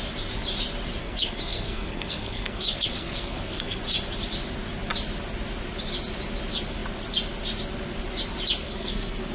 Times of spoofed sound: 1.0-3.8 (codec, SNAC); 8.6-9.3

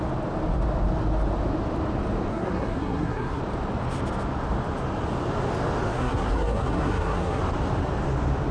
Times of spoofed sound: 2.3-3.4 (codec, SNAC); 5.9-7.4

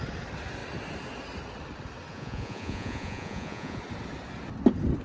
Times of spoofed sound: 2.1-3.8 (vocoder, Vocos)

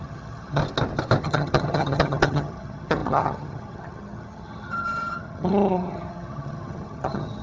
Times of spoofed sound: 0.0-0.6 (vocoder, HiFi-GAN); 1.2-7.4

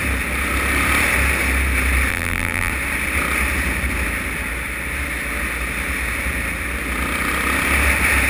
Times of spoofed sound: 2.1-2.7 (vocoder, BigVGAN v2)

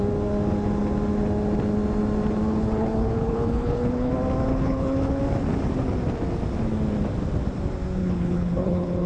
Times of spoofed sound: 2.5-4.1 (codec, HILCodec); 4.5-5.2; 8.0-9.1

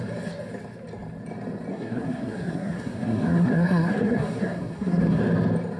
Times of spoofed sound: 1.7-5.2 (codec, SNAC)